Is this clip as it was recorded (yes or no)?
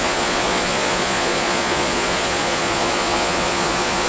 no